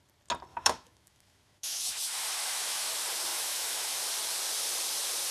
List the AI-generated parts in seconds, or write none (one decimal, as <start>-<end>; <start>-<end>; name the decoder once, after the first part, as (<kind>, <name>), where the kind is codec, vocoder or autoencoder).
0.5-2.9 (autoencoder, DAC-VAE); 3.3-4.0